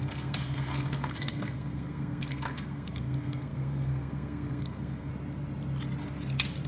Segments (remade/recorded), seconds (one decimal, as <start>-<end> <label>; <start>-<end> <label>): 0.0-5.1 remade; 5.1-6.7 recorded